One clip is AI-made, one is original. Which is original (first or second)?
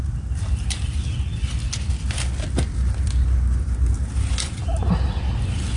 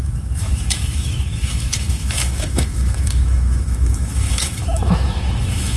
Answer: first